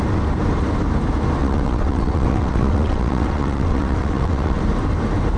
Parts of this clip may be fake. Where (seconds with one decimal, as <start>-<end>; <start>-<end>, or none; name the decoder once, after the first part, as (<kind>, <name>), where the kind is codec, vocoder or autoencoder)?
1.4-4.6 (vocoder, WaveNeXt)

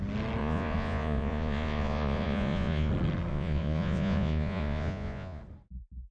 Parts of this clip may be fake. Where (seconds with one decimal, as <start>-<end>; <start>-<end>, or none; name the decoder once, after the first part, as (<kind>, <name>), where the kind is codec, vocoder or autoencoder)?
0.4-2.9 (vocoder, Vocos); 3.3-5.4

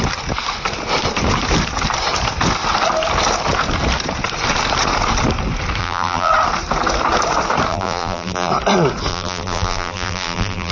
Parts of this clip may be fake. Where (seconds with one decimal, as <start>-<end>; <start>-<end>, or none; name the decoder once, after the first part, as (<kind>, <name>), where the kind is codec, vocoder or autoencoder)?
5.8-6.3 (vocoder, BigVGAN v2); 7.7-8.5; 9.1-10.7

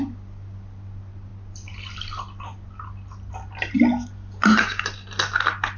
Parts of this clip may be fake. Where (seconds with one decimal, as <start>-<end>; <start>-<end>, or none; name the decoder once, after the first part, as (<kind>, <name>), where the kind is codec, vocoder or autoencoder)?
none

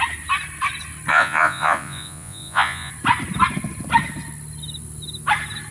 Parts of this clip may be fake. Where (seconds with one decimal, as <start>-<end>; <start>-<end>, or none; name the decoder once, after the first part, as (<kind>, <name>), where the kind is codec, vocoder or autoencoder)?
1.1-2.9 (vocoder, Vocos)

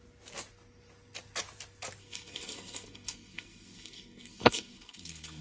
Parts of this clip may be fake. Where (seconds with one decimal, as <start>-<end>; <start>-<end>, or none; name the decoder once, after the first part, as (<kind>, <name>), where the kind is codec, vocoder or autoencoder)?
2.0-5.4 (codec, SNAC)

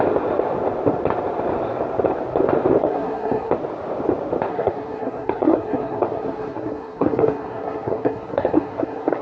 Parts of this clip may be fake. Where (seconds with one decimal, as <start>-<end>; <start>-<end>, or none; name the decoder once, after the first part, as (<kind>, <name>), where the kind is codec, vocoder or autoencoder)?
2.8-3.5 (codec, SNAC); 4.5-9.2

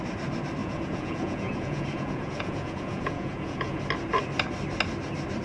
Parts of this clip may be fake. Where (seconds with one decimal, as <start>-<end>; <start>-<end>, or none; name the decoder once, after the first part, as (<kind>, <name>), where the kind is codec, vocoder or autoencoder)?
0.6-3.8 (vocoder, Vocos)